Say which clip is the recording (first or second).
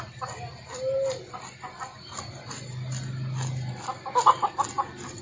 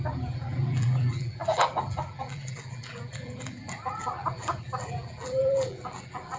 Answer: first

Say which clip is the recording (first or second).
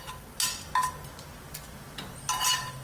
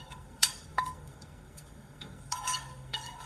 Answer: first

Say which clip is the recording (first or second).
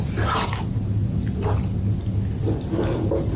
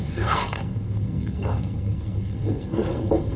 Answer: first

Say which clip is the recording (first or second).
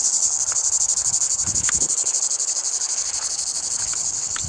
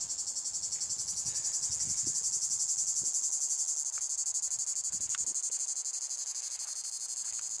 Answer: second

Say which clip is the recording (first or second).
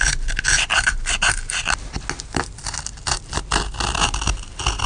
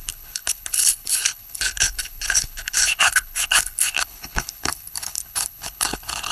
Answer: first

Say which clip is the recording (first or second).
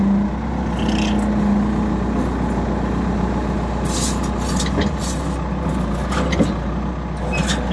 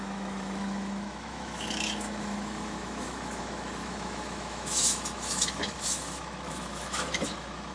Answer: first